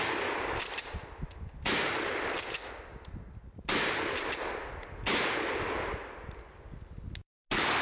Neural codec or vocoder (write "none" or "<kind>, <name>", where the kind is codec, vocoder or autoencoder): none